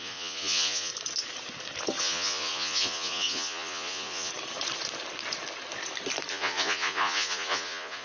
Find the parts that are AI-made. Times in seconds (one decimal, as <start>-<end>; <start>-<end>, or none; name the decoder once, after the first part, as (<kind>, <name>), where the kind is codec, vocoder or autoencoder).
0.0-0.9 (vocoder, Vocos); 2.0-4.3; 6.3-8.0

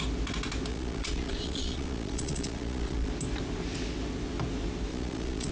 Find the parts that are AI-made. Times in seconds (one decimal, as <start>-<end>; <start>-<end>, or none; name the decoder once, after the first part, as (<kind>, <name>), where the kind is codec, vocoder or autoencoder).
0.7-3.1 (vocoder, Vocos); 4.9-5.5

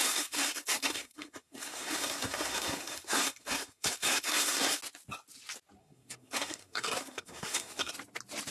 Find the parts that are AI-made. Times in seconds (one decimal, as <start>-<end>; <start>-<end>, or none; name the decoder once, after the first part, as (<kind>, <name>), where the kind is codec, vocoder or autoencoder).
0.0-4.8 (codec, SNAC); 5.8-7.9

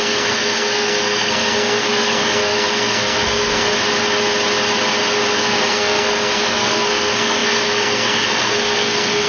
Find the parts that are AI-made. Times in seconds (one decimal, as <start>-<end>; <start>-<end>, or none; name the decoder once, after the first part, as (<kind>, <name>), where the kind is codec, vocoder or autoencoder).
0.0-3.7 (codec, SNAC); 5.3-9.3